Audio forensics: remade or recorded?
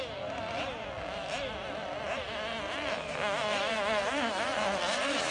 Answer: recorded